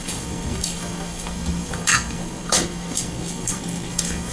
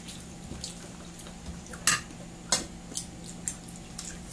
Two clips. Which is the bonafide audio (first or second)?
second